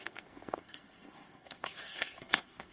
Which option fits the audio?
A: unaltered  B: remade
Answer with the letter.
B